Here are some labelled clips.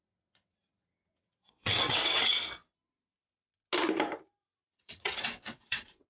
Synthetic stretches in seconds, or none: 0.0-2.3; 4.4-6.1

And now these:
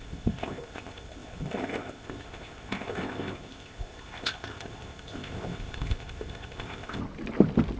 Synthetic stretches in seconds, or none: 0.0-7.0

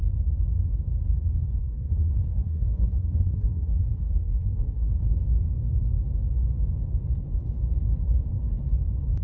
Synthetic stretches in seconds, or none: 1.6-5.1